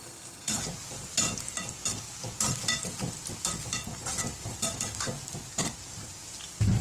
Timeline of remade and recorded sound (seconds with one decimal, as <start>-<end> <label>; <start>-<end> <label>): 0.0-0.6 remade; 0.6-6.8 recorded